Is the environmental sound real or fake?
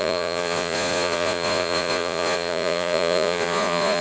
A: fake